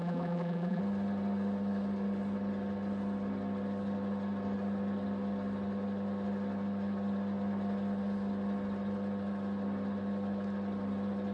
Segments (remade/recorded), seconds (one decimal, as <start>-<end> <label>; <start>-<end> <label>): 0.0-0.8 remade; 0.8-11.3 recorded